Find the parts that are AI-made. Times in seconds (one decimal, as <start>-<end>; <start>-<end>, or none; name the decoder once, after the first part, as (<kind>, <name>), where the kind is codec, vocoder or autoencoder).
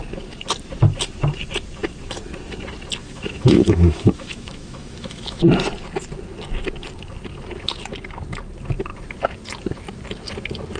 3.0-5.4 (autoencoder, DAC-VAE)